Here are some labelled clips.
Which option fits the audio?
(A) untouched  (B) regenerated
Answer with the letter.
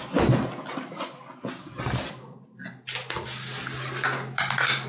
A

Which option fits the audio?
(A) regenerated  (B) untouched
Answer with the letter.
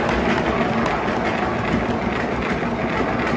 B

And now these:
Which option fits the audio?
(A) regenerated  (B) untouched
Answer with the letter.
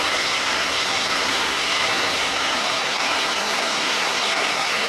A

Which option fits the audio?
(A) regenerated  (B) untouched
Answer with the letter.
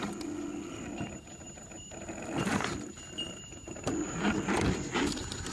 B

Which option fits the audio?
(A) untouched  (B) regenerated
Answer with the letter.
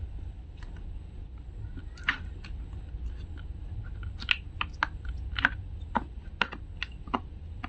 A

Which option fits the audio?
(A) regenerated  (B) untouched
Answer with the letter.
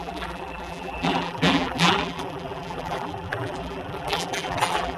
A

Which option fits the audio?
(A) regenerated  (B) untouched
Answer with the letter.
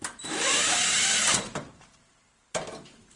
A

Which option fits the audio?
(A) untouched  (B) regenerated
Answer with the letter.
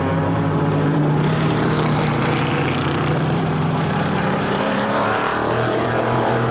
B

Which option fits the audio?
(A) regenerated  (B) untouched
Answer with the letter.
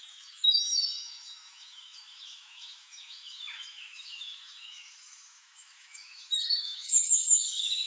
A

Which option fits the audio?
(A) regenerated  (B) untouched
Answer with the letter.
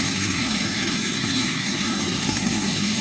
A